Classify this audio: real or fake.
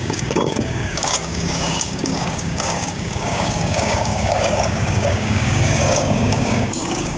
fake